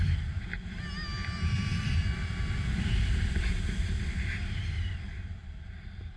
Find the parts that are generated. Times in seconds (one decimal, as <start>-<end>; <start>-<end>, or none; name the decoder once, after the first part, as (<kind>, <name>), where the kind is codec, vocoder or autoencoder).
none

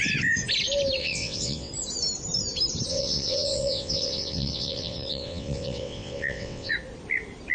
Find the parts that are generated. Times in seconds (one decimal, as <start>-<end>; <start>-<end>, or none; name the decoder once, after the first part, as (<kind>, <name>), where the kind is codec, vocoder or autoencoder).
1.0-1.7 (vocoder, WaveNeXt); 2.9-6.7